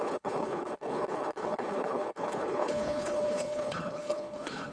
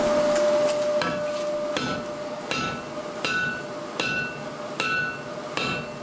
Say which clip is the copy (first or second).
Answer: first